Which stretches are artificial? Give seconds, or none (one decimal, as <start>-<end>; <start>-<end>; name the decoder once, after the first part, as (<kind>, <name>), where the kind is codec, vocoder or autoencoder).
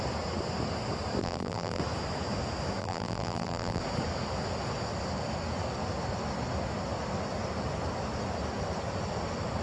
1.2-1.8 (vocoder, BigVGAN v2); 2.8-3.8